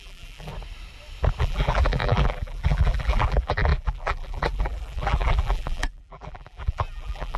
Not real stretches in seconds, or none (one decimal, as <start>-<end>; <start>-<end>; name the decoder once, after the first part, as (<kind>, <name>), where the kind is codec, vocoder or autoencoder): 0.0-0.5 (vocoder, BigVGAN v2); 1.4-7.4

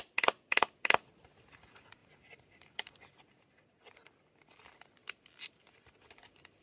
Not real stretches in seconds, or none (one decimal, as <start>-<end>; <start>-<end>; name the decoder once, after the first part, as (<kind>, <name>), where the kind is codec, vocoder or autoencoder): none

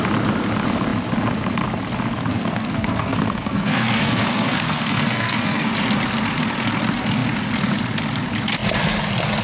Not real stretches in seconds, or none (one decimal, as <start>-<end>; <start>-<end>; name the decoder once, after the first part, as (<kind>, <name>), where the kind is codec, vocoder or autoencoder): 2.3-5.7 (codec, SNAC)

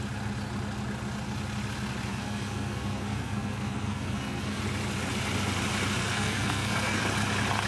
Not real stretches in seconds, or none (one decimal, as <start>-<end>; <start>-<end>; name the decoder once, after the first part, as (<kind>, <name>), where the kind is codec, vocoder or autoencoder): 2.1-4.6 (codec, SNAC); 6.0-7.0

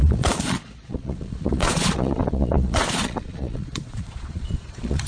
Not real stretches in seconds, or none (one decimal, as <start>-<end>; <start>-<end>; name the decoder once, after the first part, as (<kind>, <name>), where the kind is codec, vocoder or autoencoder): 0.0-5.1 (vocoder, Vocos)

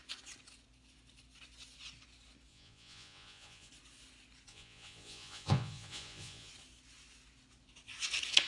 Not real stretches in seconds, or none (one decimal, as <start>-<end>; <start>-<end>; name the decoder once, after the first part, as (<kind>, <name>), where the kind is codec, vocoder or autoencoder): 2.5-3.7 (vocoder, Vocos); 4.5-6.5